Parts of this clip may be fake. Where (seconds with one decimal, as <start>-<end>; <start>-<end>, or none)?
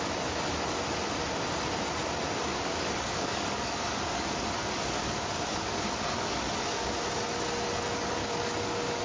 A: 2.5-6.9; 8.2-9.0